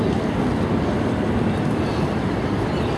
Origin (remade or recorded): recorded